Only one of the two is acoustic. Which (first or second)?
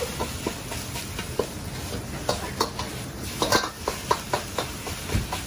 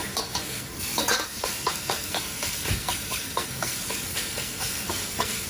first